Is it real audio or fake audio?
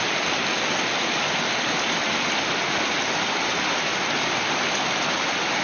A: real